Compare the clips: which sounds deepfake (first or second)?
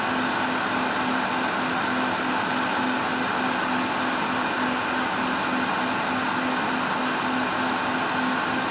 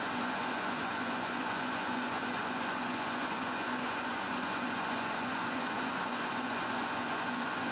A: second